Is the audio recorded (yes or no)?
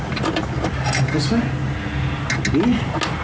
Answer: yes